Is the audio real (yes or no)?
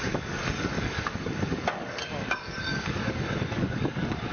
no